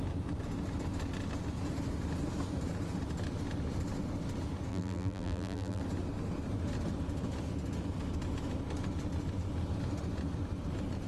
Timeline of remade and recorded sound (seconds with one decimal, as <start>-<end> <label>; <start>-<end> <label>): 0.0-4.7 recorded; 4.7-5.8 remade; 5.8-11.1 recorded